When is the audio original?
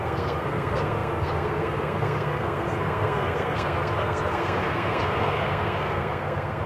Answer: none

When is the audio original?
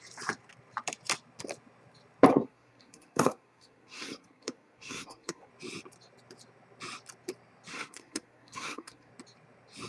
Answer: 0.0-2.3; 5.5-7.7; 9.1-9.9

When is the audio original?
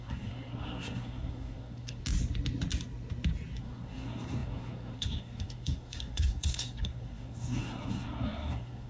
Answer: 2.0-3.6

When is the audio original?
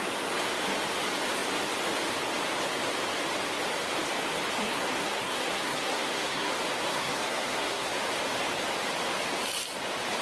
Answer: 0.0-4.6; 6.5-6.9; 7.9-10.2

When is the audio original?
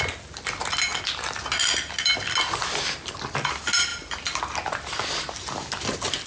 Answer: 0.0-6.3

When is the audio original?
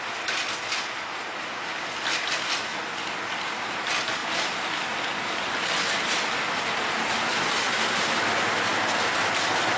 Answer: 0.0-9.8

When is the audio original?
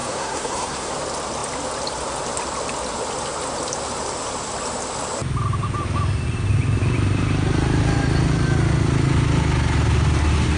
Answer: 0.9-10.6